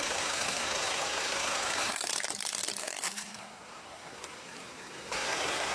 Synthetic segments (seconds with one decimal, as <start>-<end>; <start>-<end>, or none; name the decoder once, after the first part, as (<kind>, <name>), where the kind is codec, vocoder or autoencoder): 0.0-2.1 (codec, SNAC); 2.8-5.7